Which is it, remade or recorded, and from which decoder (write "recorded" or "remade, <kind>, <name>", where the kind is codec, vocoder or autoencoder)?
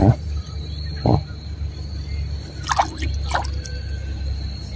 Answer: recorded